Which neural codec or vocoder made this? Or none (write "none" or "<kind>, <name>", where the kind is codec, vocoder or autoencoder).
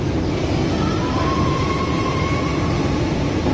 none